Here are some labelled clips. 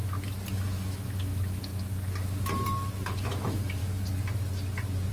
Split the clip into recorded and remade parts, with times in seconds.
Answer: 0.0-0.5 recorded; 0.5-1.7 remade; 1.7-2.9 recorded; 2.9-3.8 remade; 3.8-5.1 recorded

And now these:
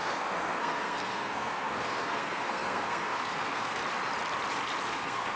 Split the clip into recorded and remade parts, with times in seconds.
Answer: 0.0-3.8 remade; 3.8-4.9 recorded; 4.9-5.4 remade

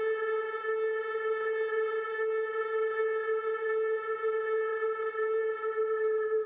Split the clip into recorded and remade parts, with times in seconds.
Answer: 0.0-4.7 recorded; 4.7-6.5 remade

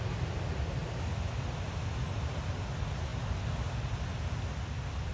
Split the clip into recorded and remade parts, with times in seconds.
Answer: 0.0-5.1 recorded